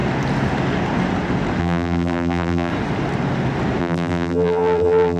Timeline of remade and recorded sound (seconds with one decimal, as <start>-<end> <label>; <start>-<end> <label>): 0.0-1.6 recorded; 1.6-2.7 remade; 2.7-3.8 recorded; 3.8-5.2 remade